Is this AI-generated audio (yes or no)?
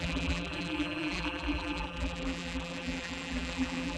yes